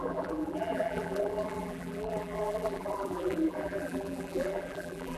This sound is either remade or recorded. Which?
remade